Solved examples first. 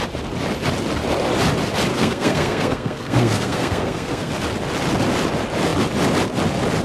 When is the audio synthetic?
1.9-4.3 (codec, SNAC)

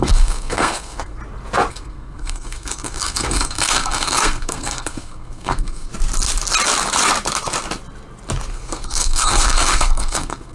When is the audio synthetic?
0.0-1.2 (codec, SNAC); 1.7-5.9; 8.5-10.5

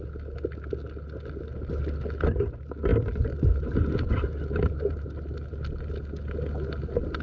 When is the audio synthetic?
none

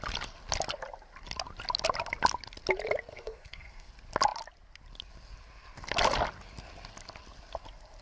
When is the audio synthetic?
3.1-3.9 (codec, SNAC)

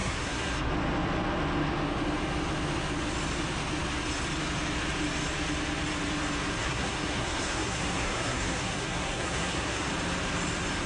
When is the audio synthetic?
0.0-0.7 (codec, SNAC); 6.6-9.9

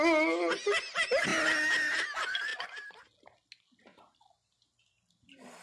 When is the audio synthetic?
none

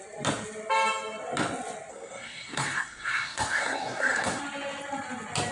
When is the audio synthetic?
1.9-4.4 (codec, SNAC)